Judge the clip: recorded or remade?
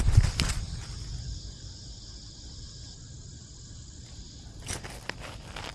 recorded